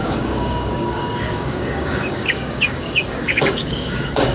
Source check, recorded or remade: remade